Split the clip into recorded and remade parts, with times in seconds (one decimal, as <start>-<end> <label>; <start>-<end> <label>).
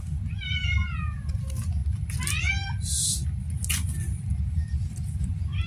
0.0-0.8 recorded; 0.8-1.4 remade; 1.4-5.7 recorded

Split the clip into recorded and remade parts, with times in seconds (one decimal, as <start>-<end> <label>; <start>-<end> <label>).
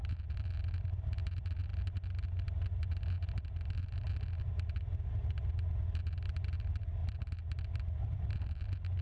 0.0-9.0 recorded